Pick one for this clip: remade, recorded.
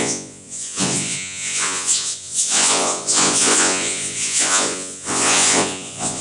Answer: remade